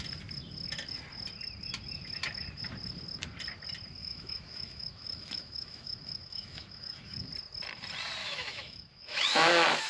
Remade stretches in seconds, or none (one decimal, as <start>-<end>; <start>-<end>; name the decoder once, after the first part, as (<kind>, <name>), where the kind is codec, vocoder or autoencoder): 4.0-7.3 (autoencoder, DAC-VAE); 8.2-9.9